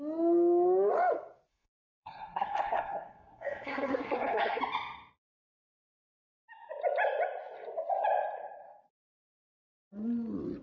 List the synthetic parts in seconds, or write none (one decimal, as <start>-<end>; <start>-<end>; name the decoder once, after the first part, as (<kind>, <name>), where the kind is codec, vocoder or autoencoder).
1.5-4.6 (codec, SNAC)

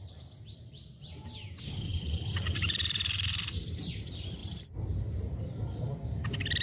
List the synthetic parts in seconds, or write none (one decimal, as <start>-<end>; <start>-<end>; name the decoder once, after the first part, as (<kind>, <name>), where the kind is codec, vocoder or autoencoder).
1.9-4.0 (vocoder, BigVGAN v2); 4.4-5.4

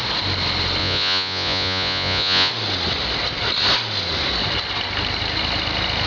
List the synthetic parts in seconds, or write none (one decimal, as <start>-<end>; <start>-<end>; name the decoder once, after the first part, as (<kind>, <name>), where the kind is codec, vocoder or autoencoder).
0.8-2.5 (vocoder, Vocos)

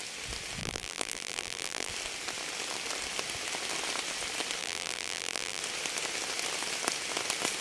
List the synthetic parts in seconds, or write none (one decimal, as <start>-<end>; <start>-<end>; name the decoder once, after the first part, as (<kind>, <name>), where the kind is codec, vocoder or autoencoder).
0.6-1.9 (vocoder, BigVGAN v2); 4.6-5.6

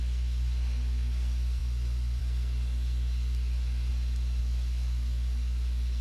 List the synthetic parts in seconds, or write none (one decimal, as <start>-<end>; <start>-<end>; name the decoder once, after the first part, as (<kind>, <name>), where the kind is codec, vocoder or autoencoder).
0.0-3.9 (codec, SNAC); 4.4-6.0